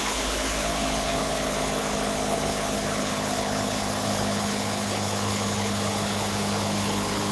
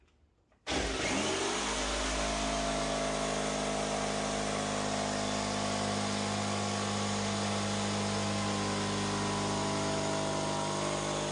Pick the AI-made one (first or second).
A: first